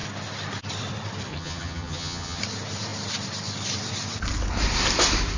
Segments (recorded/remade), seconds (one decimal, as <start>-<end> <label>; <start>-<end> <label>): 0.0-1.3 recorded; 1.3-2.4 remade; 2.4-5.4 recorded